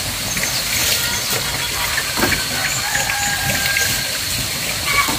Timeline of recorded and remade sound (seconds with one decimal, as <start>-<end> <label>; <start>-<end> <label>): 0.0-0.8 recorded; 0.8-1.6 remade; 1.6-5.2 recorded